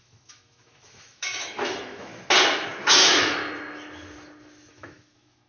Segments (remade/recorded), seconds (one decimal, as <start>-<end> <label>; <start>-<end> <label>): 0.0-2.1 remade; 2.1-2.8 recorded; 2.8-3.4 remade; 3.4-4.7 recorded; 4.7-5.5 remade

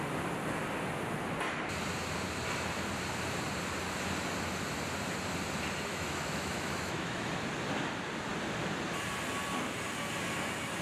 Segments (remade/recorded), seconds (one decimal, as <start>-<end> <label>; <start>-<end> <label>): 0.0-5.9 recorded; 5.9-7.3 remade; 7.3-10.8 recorded

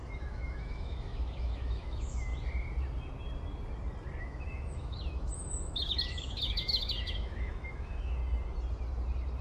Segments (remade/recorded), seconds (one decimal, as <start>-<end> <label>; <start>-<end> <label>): 0.0-2.3 remade; 2.3-4.2 recorded; 4.2-8.2 remade; 8.2-9.4 recorded

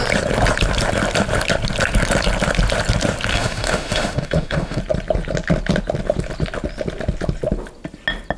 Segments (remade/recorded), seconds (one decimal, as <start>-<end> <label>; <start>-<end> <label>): 0.0-3.3 recorded; 3.3-4.8 remade; 4.8-8.4 recorded

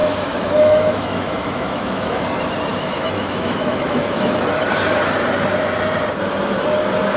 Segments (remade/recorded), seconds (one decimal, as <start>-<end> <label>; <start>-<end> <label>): 0.0-2.2 remade; 2.2-2.7 recorded; 2.7-4.4 remade; 4.4-7.2 recorded

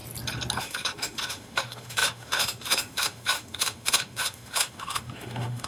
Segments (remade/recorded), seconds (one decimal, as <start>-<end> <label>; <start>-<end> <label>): 0.0-0.6 recorded; 0.6-5.7 remade